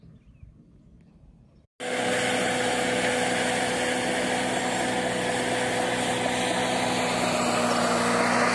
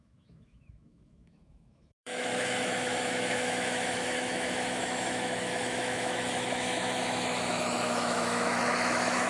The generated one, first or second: second